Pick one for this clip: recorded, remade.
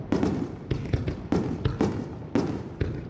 recorded